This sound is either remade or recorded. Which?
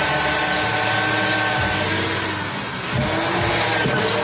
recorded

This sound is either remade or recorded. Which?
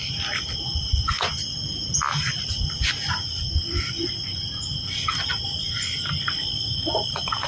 recorded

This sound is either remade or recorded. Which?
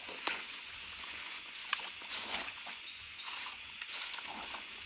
remade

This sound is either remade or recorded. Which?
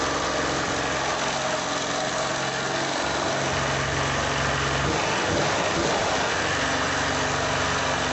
recorded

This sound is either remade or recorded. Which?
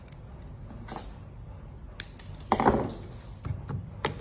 recorded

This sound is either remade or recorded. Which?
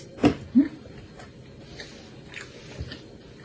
recorded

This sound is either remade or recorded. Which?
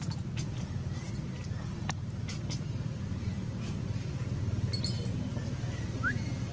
recorded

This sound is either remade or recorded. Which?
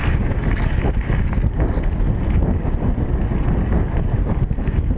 recorded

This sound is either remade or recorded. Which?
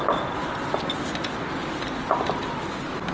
recorded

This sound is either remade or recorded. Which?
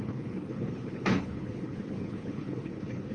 remade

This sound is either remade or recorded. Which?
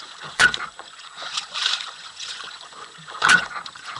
remade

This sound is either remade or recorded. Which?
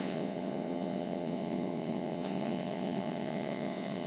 remade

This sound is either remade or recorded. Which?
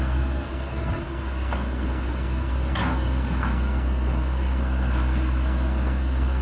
remade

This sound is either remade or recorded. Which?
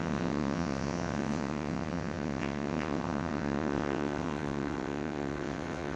remade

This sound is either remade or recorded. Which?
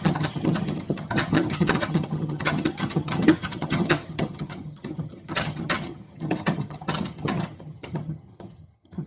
remade